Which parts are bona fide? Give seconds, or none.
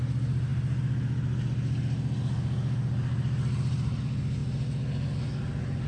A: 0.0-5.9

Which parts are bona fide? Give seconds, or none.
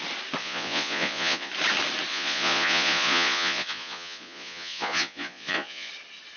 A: 0.0-0.4; 1.5-2.1; 5.9-6.4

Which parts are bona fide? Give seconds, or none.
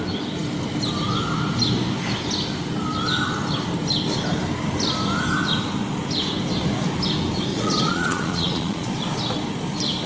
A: 0.0-7.5; 8.9-10.1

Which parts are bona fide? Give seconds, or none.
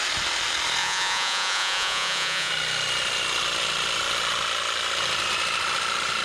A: 0.0-0.8; 2.5-6.2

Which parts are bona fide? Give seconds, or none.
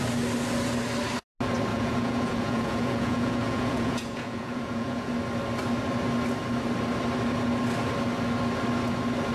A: 0.0-1.7; 5.1-9.3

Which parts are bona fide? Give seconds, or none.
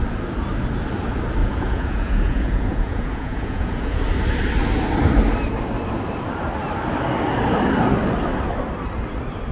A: 0.0-1.4; 4.0-9.5